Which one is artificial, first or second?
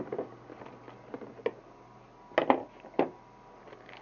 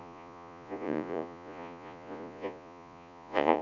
second